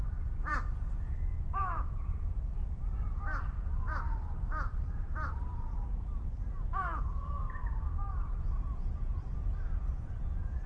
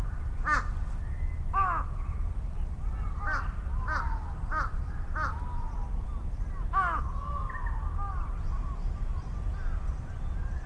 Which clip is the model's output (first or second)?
first